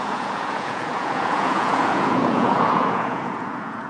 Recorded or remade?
remade